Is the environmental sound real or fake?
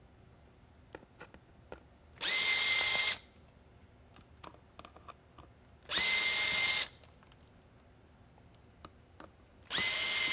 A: real